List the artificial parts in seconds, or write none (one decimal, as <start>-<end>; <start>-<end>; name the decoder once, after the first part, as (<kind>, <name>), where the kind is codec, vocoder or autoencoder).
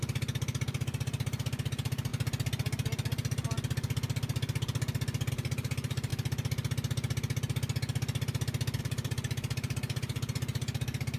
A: 0.0-2.1 (vocoder, BigVGAN v2); 5.3-6.1; 8.8-11.2